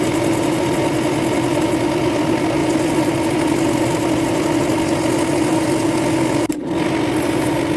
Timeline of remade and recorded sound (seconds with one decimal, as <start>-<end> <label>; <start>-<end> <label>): 0.0-7.8 recorded